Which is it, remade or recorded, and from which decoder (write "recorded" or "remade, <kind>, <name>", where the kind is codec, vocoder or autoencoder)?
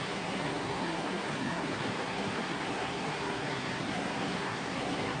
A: remade, codec, SNAC